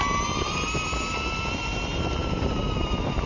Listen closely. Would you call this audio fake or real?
real